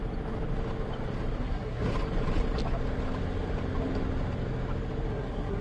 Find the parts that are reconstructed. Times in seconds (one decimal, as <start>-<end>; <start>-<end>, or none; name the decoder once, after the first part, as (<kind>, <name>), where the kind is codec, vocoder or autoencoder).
1.4-1.9 (codec, SNAC); 5.1-5.6

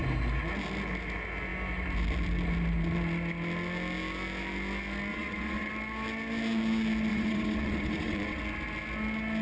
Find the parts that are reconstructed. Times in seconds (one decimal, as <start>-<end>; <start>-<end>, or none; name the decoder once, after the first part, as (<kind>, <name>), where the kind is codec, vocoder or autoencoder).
5.1-5.7 (vocoder, WaveNeXt); 7.1-8.4